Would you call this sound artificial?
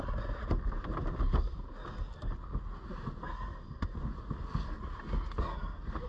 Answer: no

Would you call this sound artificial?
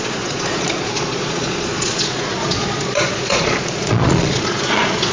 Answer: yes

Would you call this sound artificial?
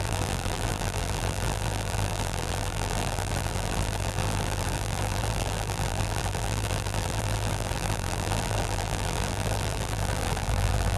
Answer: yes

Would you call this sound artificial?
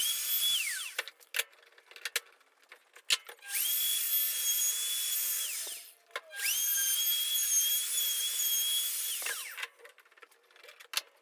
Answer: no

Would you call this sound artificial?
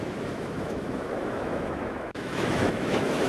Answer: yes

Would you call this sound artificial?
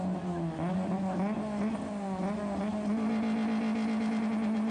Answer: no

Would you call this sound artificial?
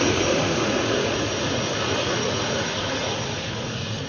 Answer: yes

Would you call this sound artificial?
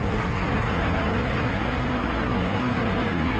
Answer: yes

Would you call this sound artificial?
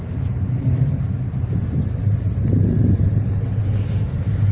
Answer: no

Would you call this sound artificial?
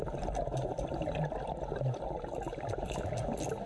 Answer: no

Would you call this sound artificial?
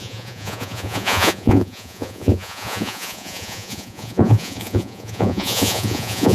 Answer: yes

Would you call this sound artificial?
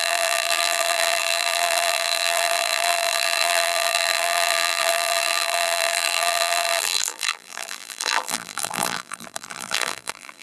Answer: yes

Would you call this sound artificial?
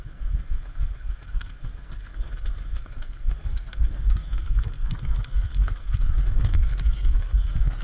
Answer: yes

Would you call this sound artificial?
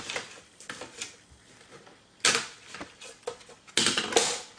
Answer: no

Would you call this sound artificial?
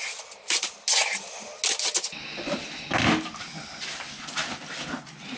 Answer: no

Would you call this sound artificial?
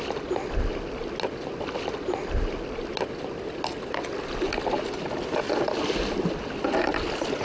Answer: no